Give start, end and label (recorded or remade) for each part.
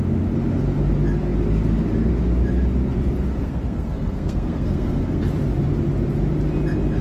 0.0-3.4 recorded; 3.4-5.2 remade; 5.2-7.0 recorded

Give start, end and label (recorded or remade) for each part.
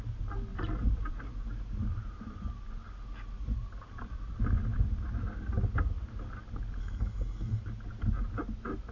0.0-6.8 recorded; 6.8-7.6 remade; 7.6-8.9 recorded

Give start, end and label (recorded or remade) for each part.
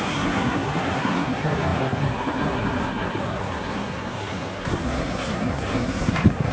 0.0-6.5 remade